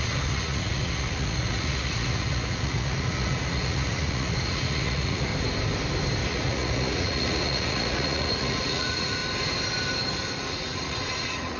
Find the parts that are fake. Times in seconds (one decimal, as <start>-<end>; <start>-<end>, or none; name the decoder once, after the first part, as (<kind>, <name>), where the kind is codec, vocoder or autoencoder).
0.0-5.3 (vocoder, Vocos); 6.2-9.2; 10.4-11.6